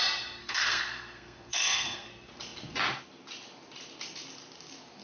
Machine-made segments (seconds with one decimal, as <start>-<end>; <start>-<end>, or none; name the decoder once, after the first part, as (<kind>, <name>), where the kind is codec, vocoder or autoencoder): 0.4-2.1 (codec, SNAC)